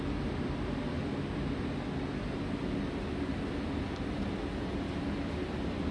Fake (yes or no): no